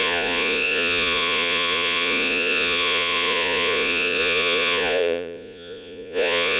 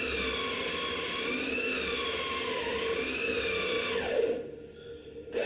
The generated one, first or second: first